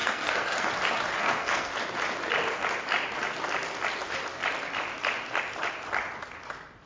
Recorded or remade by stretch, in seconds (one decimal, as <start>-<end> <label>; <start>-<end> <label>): 0.0-0.7 remade; 0.7-1.2 recorded; 1.2-1.7 remade; 1.7-6.9 recorded